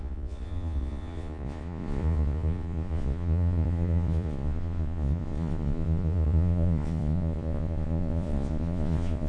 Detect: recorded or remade remade